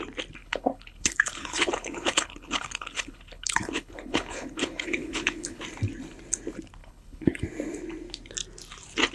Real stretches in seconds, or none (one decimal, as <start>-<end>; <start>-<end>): 0.0-0.4; 5.6-6.8; 7.4-9.1